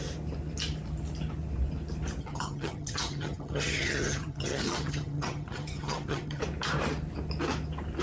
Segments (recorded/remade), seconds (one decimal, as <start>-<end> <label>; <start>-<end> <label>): 0.0-2.2 recorded; 2.2-6.4 remade; 6.4-8.0 recorded